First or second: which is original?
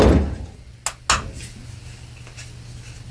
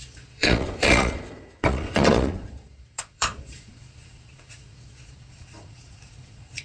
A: first